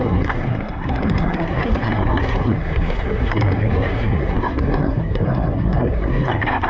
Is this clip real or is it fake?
fake